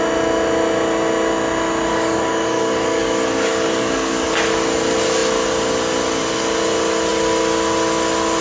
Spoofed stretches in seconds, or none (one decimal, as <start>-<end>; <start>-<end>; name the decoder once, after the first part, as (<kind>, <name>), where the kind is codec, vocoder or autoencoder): 1.9-4.3 (codec, DAC)